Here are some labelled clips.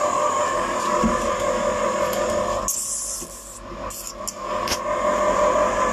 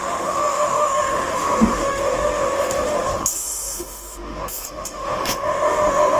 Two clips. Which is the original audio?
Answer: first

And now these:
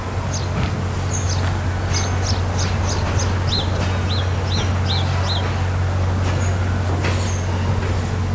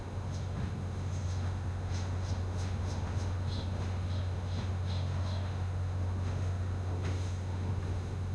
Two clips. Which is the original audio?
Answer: first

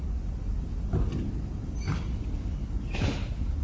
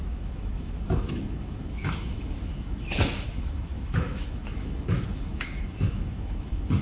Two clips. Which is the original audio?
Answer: first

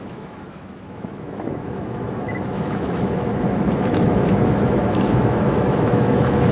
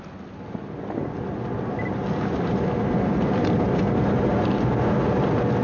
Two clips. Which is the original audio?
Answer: second